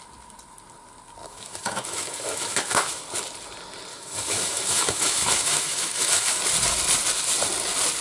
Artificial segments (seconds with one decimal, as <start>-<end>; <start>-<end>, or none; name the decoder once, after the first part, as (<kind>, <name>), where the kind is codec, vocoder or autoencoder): 1.2-3.0 (autoencoder, DAC-VAE); 3.9-6.4